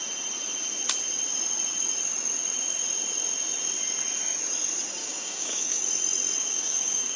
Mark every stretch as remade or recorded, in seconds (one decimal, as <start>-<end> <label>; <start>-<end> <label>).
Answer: 0.0-5.0 recorded; 5.0-5.8 remade; 5.8-6.4 recorded; 6.4-7.2 remade